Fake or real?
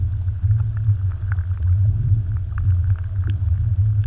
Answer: real